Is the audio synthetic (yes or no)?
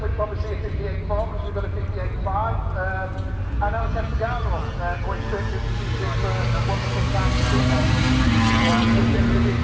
no